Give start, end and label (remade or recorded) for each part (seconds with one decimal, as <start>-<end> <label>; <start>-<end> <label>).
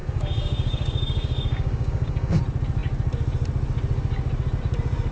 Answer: 0.0-2.4 remade; 2.4-5.1 recorded